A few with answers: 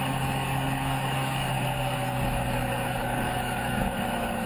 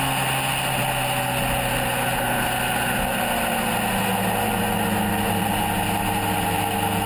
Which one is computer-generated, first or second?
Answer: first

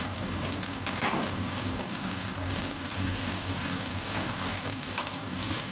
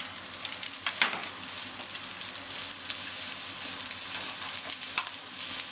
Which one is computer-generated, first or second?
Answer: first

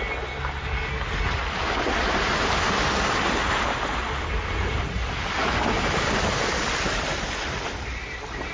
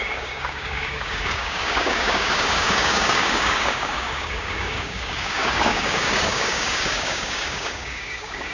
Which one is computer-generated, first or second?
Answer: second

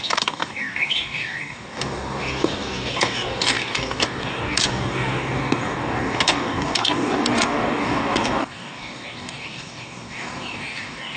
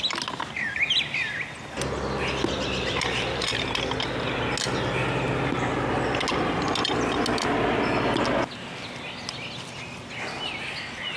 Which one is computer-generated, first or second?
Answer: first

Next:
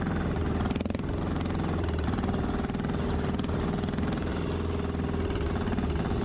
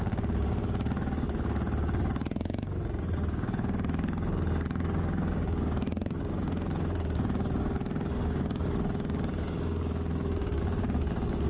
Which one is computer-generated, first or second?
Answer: second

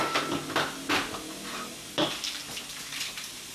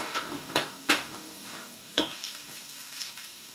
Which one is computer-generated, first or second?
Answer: second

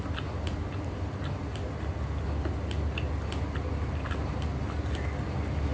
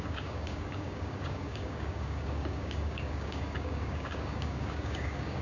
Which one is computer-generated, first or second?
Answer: second